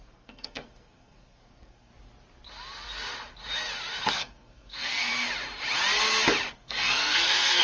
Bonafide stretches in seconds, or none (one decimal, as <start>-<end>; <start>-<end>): 1.9-4.1; 5.1-6.5